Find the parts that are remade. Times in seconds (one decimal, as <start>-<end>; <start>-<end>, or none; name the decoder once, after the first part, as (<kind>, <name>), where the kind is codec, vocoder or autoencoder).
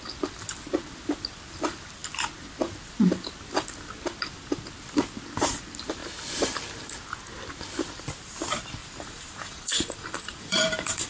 8.8-11.1 (vocoder, BigVGAN v2)